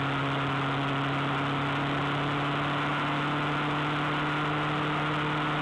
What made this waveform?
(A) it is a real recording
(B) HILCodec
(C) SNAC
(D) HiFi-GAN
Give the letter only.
A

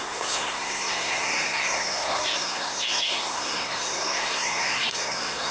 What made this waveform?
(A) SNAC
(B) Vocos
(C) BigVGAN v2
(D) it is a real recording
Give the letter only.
A